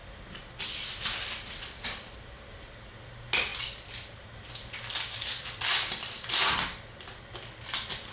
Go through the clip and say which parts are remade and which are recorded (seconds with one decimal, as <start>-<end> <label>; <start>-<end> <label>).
0.0-8.1 recorded